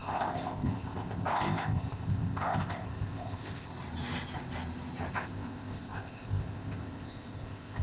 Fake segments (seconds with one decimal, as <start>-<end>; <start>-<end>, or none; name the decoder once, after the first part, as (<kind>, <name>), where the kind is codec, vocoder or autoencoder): 0.0-3.7 (codec, ZipCodec); 5.1-7.8